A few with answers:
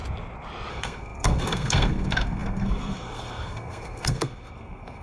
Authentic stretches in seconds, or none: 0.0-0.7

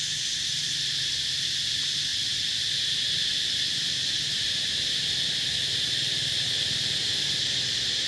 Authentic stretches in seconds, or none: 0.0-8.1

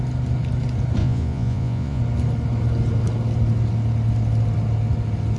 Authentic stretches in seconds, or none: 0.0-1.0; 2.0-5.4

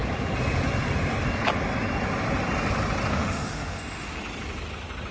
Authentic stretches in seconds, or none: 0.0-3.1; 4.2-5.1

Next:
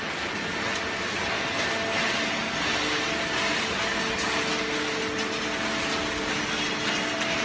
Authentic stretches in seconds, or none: 0.0-7.4

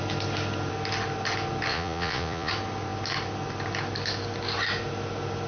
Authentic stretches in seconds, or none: 0.0-1.7; 2.5-5.5

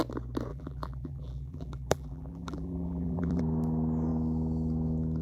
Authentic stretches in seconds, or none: 0.0-0.5; 3.4-5.2